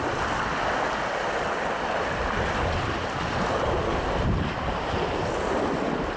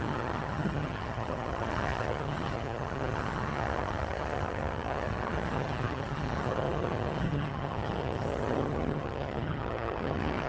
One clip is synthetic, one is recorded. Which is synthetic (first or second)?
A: second